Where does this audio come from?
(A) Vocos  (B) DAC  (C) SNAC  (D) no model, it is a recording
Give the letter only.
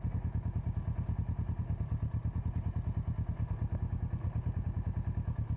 D